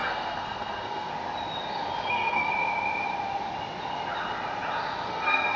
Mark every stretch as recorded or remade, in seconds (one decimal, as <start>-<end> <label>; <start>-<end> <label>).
0.0-1.1 remade; 1.1-2.1 recorded; 2.1-2.5 remade; 2.5-5.1 recorded; 5.1-5.6 remade